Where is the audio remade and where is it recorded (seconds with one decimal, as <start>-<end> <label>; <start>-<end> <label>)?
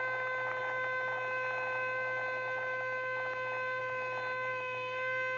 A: 0.0-5.4 recorded